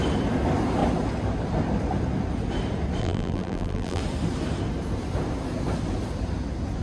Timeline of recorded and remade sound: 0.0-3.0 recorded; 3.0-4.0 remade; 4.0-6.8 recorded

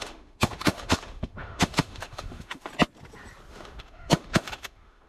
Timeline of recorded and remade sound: 0.0-2.7 remade; 2.7-3.5 recorded; 3.5-5.1 remade